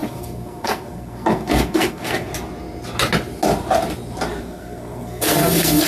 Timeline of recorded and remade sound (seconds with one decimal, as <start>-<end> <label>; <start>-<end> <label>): 0.0-2.3 remade; 2.3-4.4 recorded; 4.4-5.9 remade